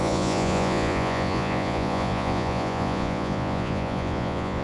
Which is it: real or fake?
fake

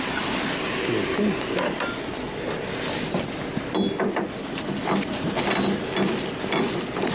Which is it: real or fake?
real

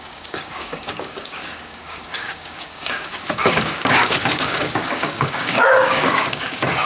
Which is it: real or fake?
fake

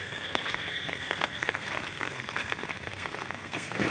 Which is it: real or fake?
fake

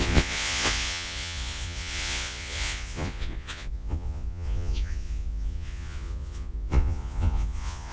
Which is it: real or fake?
fake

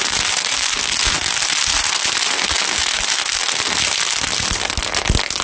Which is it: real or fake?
real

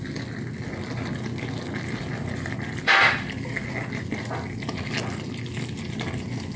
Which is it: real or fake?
real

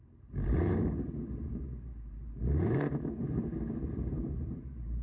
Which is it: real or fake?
fake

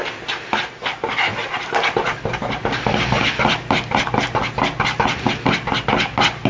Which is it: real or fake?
real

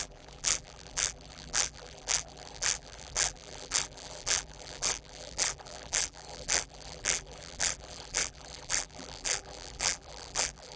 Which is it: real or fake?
fake